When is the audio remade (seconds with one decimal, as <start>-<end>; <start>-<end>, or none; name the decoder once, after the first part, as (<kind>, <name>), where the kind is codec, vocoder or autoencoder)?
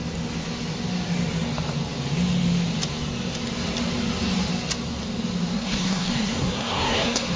5.5-7.4 (codec, SNAC)